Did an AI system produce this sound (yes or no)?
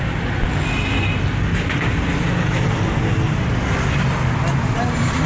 no